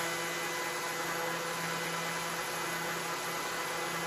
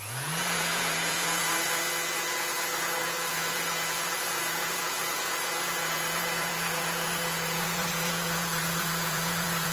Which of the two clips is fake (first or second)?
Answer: second